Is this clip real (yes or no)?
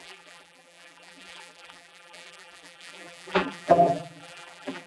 no